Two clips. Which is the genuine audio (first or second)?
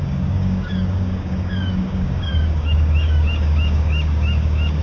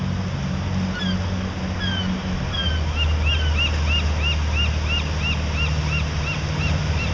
second